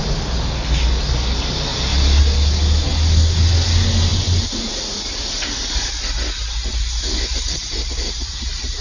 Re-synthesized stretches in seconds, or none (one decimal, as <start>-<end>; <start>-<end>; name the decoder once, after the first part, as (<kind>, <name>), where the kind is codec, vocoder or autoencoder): none